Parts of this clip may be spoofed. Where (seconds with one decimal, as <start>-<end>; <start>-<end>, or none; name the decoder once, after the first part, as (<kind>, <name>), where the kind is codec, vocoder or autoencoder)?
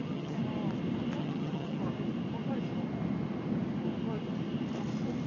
0.0-0.4 (vocoder, HiFi-GAN); 1.2-1.8